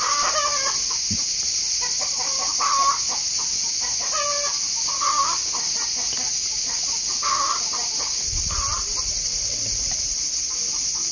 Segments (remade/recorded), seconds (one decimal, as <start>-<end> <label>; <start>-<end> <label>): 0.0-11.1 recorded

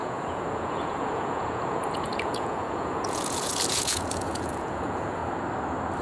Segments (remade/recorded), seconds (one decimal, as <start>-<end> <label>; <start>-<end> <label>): 0.0-5.2 remade; 5.2-6.0 recorded

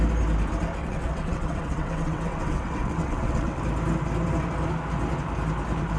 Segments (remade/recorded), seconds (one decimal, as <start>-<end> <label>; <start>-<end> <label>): 0.0-0.8 recorded; 0.8-3.6 remade; 3.6-6.0 recorded

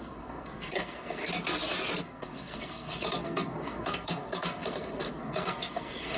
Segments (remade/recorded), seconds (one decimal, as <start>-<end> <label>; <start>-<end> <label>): 0.0-1.2 remade; 1.2-2.0 recorded; 2.0-6.2 remade

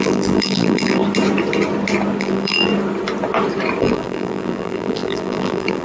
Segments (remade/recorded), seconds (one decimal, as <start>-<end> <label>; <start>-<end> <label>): 0.0-1.0 remade; 1.0-2.2 recorded; 2.2-2.7 remade; 2.7-3.8 recorded; 3.8-5.8 remade

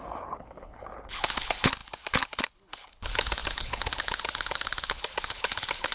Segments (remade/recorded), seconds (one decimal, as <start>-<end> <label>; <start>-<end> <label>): 0.0-5.9 remade